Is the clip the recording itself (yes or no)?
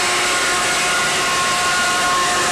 yes